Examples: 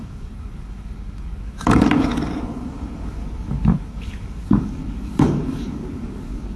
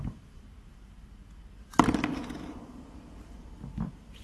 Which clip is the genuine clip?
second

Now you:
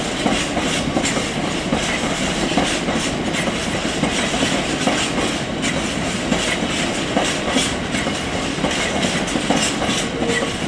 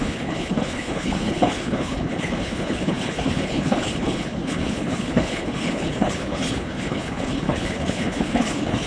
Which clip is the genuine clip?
first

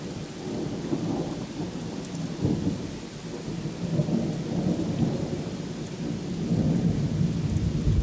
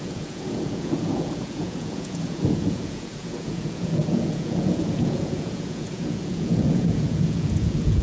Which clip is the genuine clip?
first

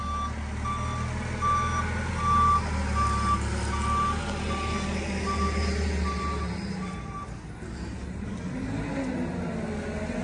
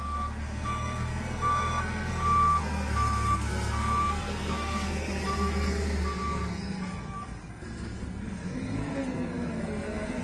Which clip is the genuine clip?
first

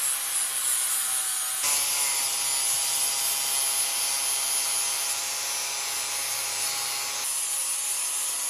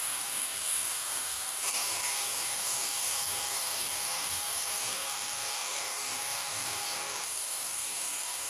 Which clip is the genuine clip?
first